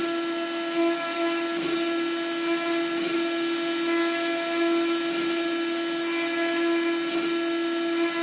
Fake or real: real